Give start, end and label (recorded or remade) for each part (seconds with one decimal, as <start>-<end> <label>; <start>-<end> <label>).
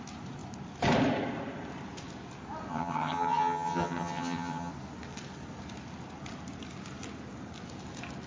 0.0-2.7 recorded; 2.7-4.7 remade; 4.7-8.3 recorded